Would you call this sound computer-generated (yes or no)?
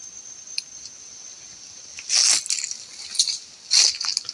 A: no